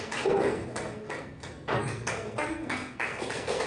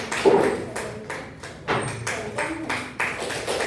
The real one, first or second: second